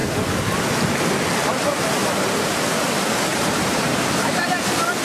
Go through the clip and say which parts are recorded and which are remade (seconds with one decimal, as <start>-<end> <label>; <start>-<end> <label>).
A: 0.0-2.0 recorded; 2.0-2.6 remade; 2.6-3.3 recorded; 3.3-4.5 remade; 4.5-5.0 recorded

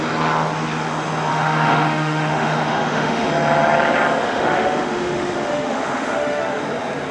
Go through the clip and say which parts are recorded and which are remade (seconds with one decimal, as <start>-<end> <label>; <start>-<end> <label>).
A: 0.0-1.3 recorded; 1.3-3.3 remade; 3.3-4.2 recorded; 4.2-6.6 remade; 6.6-7.1 recorded

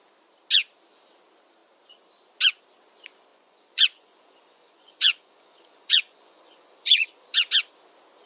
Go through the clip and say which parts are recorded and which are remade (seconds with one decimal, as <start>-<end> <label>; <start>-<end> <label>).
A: 0.0-3.3 recorded; 3.3-7.3 remade; 7.3-8.3 recorded

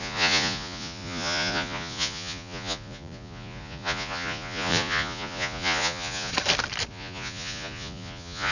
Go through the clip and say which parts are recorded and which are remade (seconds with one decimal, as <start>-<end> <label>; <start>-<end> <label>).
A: 0.0-6.3 remade; 6.3-6.9 recorded; 6.9-8.5 remade